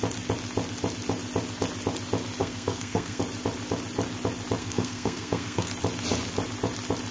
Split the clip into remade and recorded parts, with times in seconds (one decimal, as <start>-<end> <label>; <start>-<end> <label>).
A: 0.0-2.4 recorded; 2.4-3.2 remade; 3.2-4.6 recorded; 4.6-5.7 remade; 5.7-7.1 recorded